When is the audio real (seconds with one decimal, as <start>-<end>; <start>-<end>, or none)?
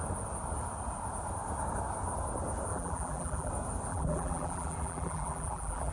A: 0.0-2.7; 3.5-3.9